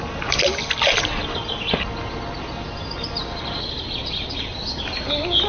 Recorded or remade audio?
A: recorded